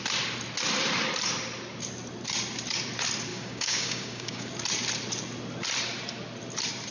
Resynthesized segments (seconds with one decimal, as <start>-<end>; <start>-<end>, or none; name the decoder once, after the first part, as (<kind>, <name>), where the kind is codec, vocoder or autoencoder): 3.3-4.5 (codec, DAC)